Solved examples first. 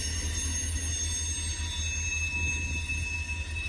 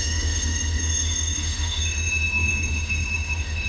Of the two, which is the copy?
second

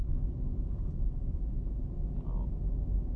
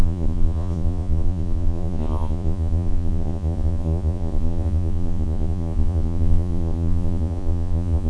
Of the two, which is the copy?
second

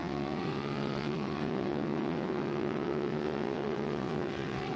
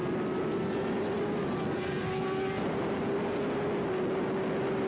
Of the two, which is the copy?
first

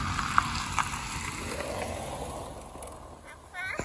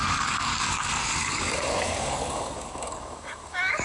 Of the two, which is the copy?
second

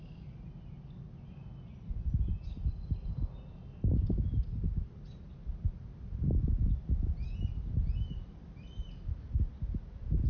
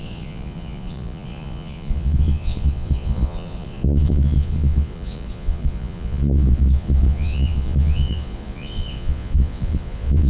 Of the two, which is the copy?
second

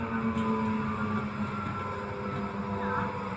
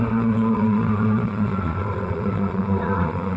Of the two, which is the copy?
second